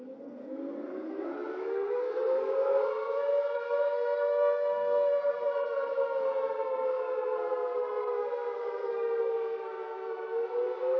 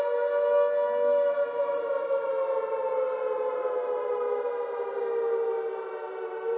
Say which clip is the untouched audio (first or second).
second